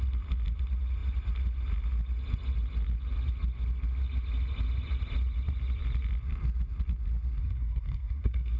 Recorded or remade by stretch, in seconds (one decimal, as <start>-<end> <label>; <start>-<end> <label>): 0.0-7.4 recorded; 7.4-8.6 remade